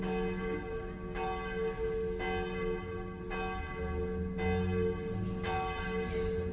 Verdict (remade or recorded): recorded